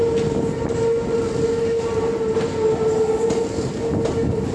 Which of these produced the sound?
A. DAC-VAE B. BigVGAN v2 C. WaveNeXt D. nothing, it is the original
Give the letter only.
D